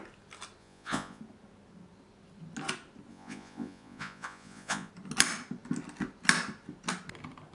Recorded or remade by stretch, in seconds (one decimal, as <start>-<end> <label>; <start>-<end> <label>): 0.0-0.6 recorded; 0.6-1.2 remade; 1.2-3.1 recorded; 3.1-4.9 remade; 4.9-7.5 recorded